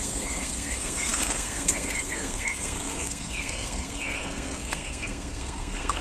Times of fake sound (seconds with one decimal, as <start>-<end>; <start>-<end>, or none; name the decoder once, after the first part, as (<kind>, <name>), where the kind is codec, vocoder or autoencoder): 0.0-6.0 (codec, SNAC)